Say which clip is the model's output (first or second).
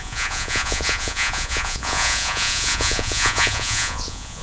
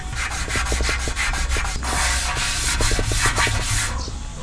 first